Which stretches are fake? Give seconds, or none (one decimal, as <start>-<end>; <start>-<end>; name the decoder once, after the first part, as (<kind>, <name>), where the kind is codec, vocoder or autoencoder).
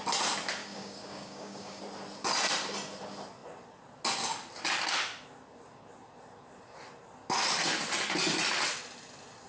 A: 0.6-1.8 (codec, DAC)